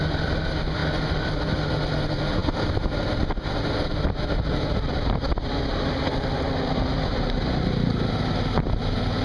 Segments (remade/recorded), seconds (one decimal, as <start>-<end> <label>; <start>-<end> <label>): 0.0-9.2 recorded